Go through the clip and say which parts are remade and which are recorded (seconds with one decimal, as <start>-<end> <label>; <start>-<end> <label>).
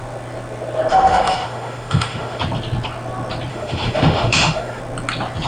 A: 0.0-0.9 recorded; 0.9-2.4 remade; 2.4-3.5 recorded; 3.5-4.8 remade; 4.8-5.5 recorded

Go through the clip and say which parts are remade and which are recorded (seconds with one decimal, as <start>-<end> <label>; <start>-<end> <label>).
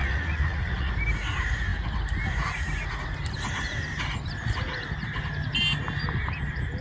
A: 0.0-0.9 remade; 0.9-6.8 recorded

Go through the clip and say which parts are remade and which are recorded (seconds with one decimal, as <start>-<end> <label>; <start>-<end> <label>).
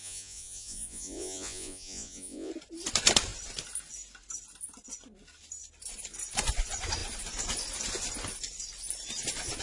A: 0.0-2.5 remade; 2.5-9.6 recorded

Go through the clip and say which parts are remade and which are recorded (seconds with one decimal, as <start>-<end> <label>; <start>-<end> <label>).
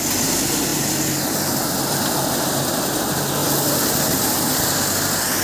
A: 0.0-5.4 recorded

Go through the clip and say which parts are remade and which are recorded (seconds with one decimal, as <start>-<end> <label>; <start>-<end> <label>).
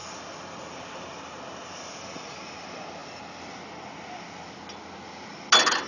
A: 0.0-2.3 remade; 2.3-5.9 recorded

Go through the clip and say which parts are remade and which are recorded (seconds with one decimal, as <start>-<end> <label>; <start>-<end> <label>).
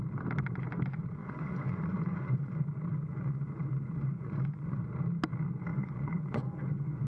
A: 0.0-1.2 recorded; 1.2-2.6 remade; 2.6-3.1 recorded; 3.1-4.8 remade; 4.8-5.7 recorded; 5.7-7.1 remade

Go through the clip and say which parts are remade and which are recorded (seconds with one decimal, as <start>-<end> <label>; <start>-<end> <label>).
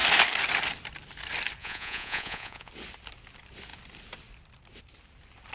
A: 0.0-1.6 recorded; 1.6-2.7 remade; 2.7-5.5 recorded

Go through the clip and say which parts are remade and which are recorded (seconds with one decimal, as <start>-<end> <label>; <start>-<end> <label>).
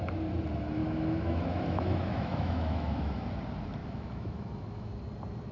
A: 0.0-0.8 recorded; 0.8-3.3 remade; 3.3-3.8 recorded; 3.8-4.9 remade; 4.9-5.5 recorded